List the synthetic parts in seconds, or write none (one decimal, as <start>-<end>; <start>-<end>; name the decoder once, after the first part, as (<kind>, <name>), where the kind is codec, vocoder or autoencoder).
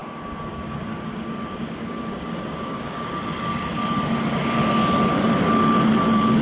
0.0-3.1 (codec, DAC)